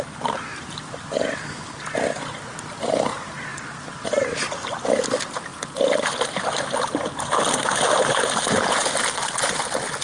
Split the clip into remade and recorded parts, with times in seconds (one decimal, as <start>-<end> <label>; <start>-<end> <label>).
0.0-10.0 recorded